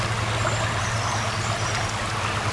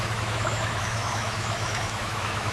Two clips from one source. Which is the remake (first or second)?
second